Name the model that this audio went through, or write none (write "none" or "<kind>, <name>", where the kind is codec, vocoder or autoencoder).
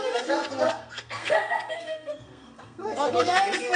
codec, SNAC